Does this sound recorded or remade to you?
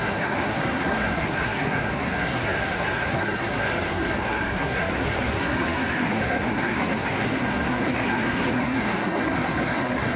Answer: remade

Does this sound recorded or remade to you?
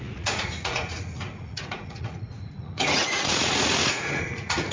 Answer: remade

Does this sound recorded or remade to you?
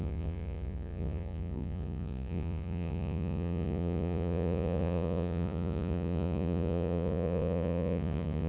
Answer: remade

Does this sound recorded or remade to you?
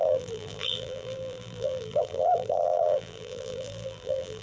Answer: remade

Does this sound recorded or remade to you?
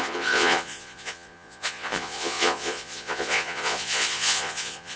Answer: remade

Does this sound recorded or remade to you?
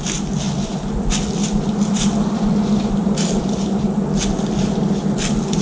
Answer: recorded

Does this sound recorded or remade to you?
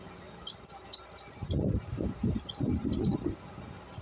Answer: recorded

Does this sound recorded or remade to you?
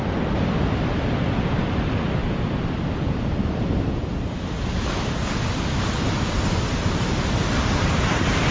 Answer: recorded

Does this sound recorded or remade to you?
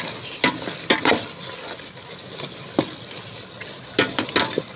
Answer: recorded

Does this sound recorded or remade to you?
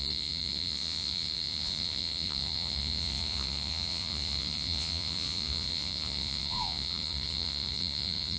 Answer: remade